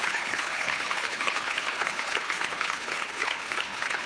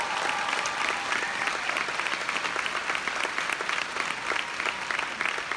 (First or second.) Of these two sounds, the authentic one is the second